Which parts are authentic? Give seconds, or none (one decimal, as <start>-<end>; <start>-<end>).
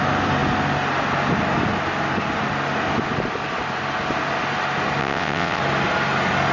0.0-5.0; 5.6-6.5